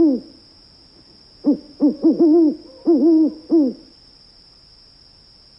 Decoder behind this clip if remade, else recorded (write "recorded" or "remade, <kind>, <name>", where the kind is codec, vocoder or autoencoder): recorded